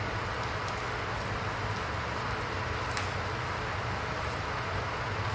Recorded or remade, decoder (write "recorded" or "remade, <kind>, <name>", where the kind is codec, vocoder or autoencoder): recorded